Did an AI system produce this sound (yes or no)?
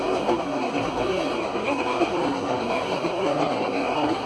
yes